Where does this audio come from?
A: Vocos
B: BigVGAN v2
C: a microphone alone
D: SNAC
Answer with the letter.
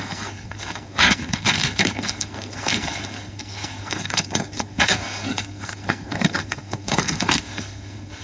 D